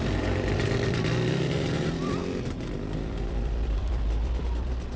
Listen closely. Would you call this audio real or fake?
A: fake